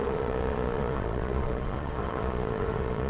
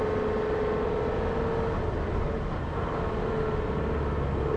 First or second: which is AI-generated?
first